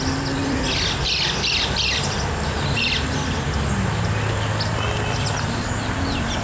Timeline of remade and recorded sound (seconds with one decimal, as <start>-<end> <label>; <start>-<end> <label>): 0.0-6.4 recorded